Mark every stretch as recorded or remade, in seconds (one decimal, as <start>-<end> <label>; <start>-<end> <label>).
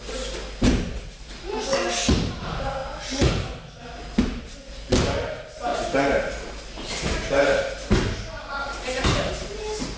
0.0-5.7 recorded; 5.7-6.3 remade; 6.3-10.0 recorded